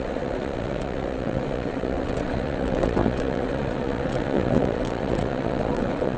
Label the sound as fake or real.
fake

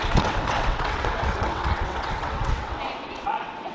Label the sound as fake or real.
fake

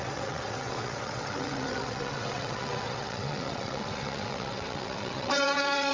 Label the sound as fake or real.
fake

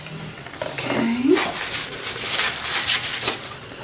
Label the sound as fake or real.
real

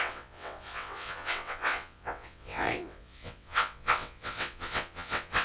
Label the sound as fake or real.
fake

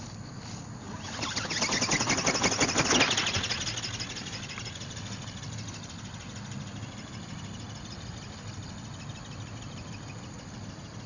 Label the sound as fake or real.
real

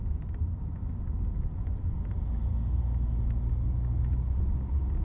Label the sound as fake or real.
real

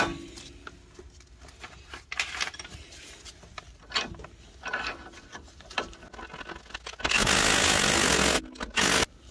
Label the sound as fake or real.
real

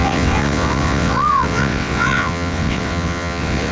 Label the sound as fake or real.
fake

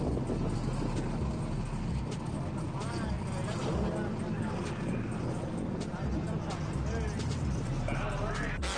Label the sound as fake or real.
real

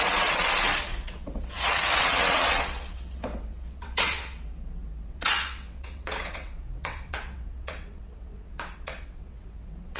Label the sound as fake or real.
fake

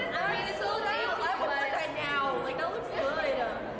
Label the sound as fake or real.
real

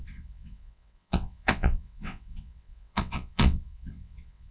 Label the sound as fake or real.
fake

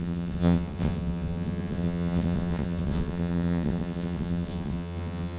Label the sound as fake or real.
fake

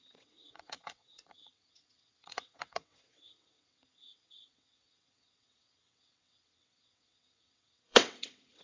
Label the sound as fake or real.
fake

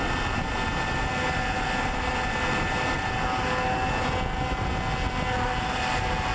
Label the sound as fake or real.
real